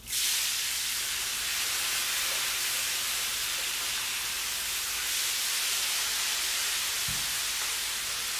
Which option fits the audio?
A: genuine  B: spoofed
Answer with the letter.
A